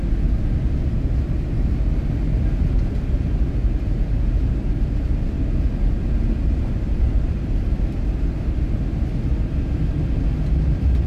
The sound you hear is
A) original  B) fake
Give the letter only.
A